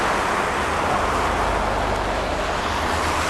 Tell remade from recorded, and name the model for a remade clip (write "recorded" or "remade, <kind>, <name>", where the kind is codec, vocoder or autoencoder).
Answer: recorded